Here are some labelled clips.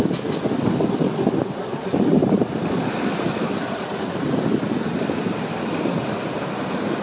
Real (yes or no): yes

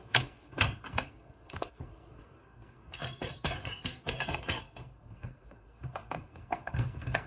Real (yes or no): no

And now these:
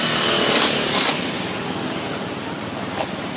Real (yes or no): yes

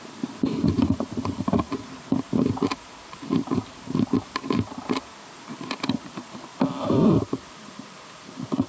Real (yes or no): yes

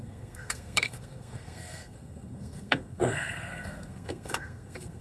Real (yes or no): no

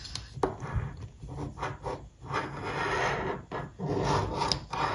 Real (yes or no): yes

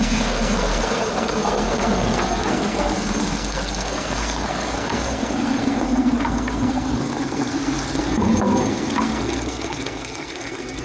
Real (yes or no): no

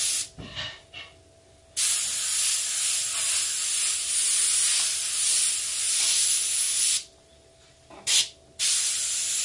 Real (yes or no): yes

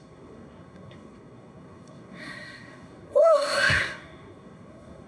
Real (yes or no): no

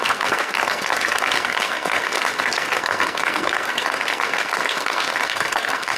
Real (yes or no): no